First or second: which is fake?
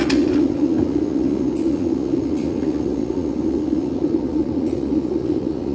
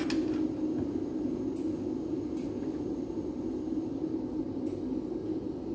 first